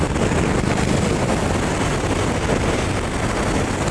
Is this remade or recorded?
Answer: recorded